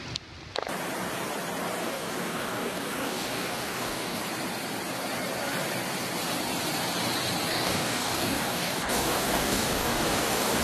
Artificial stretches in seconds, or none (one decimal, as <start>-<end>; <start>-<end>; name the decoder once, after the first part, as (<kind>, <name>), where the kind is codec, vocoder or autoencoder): 1.8-4.2 (codec, DAC); 7.5-10.6